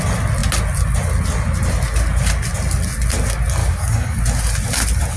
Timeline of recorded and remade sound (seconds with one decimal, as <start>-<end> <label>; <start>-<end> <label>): 0.0-3.6 recorded; 3.6-4.2 remade; 4.2-5.2 recorded